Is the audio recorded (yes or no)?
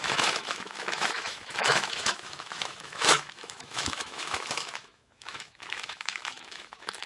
no